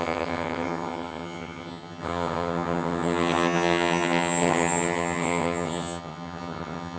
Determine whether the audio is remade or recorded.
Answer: remade